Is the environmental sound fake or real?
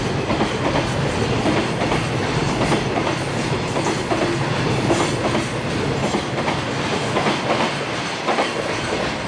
real